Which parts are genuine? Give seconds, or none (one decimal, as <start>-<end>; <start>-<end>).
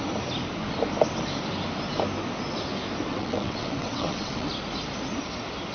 0.0-3.1; 4.5-5.7